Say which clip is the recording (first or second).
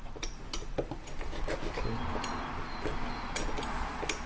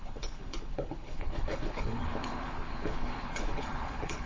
first